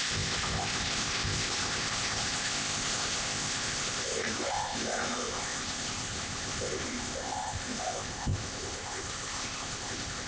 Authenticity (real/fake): fake